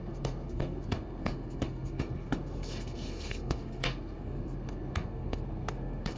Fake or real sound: fake